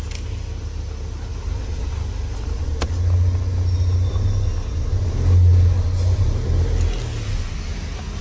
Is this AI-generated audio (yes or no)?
no